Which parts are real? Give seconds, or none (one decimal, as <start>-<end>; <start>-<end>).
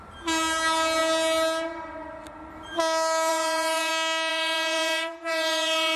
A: 0.0-3.3; 3.9-4.3